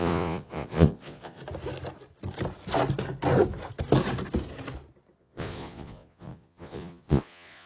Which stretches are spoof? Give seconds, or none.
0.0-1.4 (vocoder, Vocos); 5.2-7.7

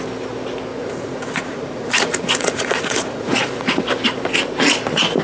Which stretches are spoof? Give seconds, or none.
0.7-3.8 (vocoder, Vocos)

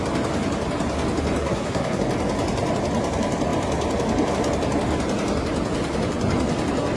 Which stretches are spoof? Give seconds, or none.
1.4-2.0 (codec, SNAC)